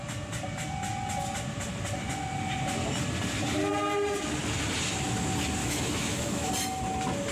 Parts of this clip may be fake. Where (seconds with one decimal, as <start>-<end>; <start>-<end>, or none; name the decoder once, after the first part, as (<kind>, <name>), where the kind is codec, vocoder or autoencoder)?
5.6-6.5 (autoencoder, DAC-VAE)